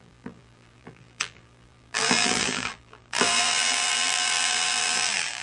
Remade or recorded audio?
remade